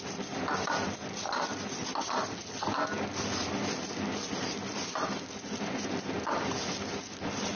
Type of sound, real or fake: real